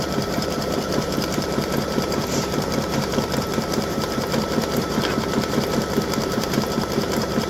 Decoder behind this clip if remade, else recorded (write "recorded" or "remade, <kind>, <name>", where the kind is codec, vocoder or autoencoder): remade, vocoder, BigVGAN v2